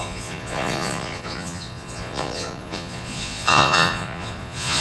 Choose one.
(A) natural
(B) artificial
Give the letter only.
B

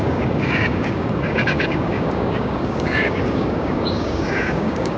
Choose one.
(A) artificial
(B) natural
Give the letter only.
A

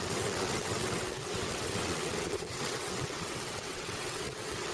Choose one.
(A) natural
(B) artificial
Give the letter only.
B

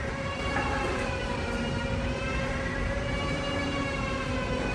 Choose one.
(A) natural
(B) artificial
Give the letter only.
B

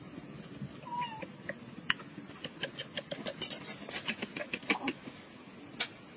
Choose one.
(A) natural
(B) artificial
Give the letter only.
A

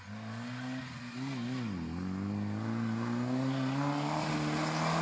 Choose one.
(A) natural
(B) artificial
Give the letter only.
A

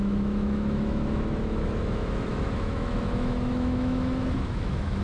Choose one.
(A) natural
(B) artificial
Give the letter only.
B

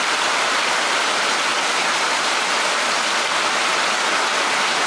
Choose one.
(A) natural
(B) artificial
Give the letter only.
A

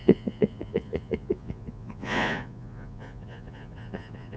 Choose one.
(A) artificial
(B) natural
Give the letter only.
A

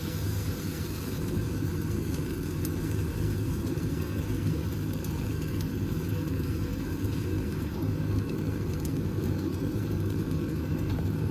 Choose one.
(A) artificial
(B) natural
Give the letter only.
A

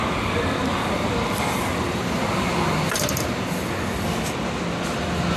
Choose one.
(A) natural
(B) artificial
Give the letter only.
A